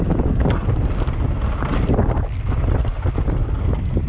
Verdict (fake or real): real